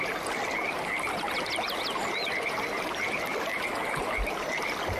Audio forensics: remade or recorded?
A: recorded